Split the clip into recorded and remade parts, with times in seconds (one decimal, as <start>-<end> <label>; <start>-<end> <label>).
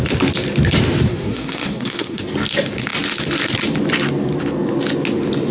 0.0-1.1 recorded; 1.1-2.2 remade; 2.2-5.5 recorded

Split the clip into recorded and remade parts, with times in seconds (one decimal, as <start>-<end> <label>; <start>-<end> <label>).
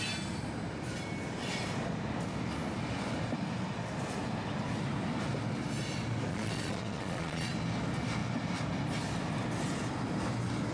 0.0-6.3 recorded; 6.3-7.5 remade; 7.5-10.7 recorded